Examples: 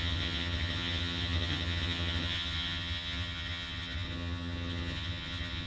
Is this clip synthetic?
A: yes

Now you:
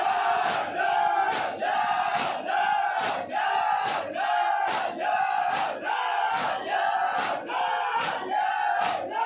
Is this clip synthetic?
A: no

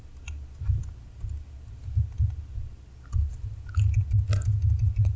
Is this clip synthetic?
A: no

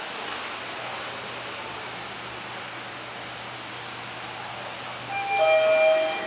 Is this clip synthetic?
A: no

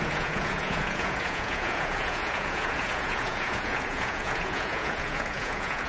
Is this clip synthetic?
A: yes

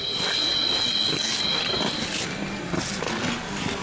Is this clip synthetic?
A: no